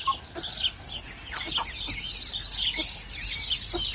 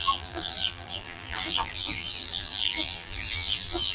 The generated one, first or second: second